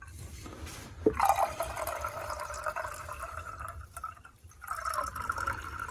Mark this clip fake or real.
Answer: fake